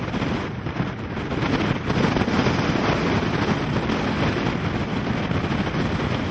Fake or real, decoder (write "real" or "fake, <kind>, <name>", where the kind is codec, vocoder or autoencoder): real